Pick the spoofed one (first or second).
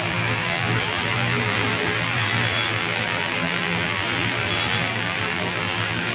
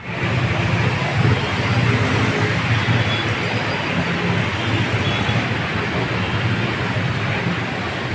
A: first